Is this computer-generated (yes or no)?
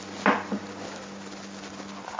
no